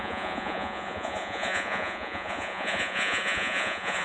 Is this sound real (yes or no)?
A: no